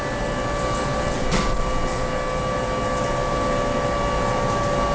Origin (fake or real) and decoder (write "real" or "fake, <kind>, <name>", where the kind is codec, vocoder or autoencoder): real